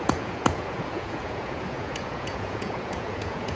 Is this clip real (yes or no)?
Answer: no